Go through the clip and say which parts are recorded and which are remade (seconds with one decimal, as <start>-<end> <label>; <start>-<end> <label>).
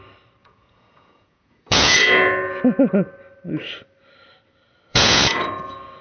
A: 0.0-0.4 recorded; 0.4-2.6 remade; 2.6-4.9 recorded; 4.9-5.4 remade; 5.4-6.0 recorded